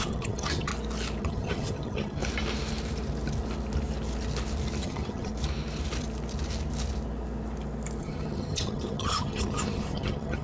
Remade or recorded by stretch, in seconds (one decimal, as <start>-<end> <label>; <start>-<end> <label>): 0.0-0.7 remade; 0.7-1.2 recorded; 1.2-2.2 remade; 2.2-4.8 recorded; 4.8-5.3 remade; 5.3-8.0 recorded; 8.0-10.4 remade